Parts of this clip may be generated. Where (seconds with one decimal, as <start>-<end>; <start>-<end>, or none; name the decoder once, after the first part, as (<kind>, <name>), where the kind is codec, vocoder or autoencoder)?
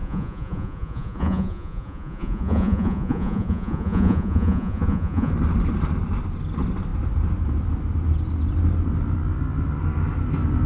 0.0-5.3 (vocoder, Vocos)